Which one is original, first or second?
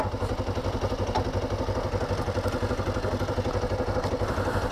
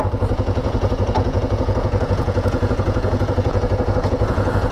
first